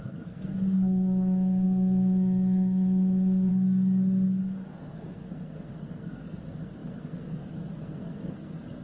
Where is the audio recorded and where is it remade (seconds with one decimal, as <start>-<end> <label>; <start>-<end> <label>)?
0.0-3.5 remade; 3.5-4.8 recorded; 4.8-8.8 remade